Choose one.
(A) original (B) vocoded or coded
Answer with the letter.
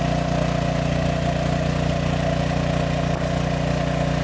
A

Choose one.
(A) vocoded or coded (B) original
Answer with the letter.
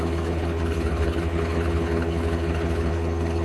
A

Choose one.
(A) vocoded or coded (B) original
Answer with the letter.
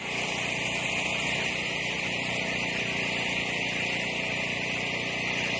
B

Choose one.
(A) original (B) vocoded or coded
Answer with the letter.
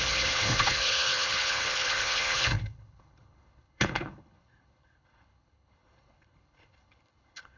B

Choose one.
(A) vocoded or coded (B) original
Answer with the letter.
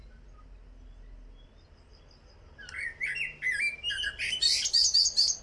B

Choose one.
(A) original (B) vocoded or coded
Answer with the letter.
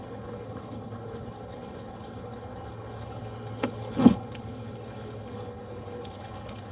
B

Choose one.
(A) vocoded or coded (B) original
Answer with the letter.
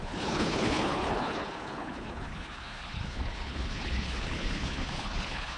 A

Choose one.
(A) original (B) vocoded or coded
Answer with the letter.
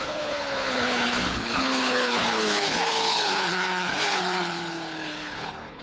B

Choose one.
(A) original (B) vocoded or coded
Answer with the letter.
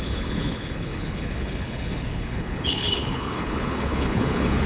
B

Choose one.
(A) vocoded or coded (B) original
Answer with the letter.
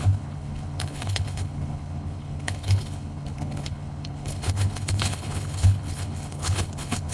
A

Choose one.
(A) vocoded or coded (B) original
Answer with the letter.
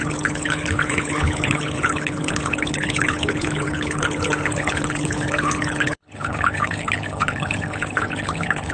A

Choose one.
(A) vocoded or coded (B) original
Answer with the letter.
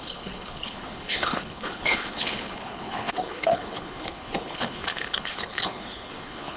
A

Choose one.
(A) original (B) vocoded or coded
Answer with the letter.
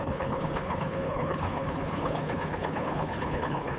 B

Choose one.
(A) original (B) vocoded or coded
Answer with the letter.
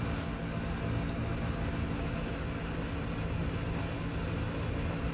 A